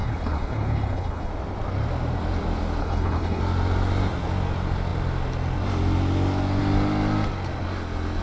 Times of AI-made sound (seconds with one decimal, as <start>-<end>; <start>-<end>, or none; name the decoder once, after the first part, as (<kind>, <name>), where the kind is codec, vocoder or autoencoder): 0.0-1.3 (codec, HILCodec); 2.8-3.4